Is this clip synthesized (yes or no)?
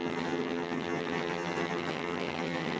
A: yes